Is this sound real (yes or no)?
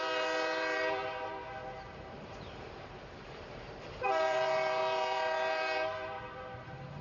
no